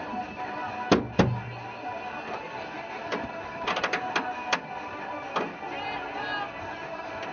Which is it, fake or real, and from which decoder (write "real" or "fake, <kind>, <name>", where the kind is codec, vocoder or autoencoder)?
real